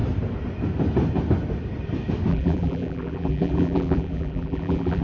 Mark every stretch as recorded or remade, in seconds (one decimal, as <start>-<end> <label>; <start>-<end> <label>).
0.0-2.3 recorded; 2.3-5.0 remade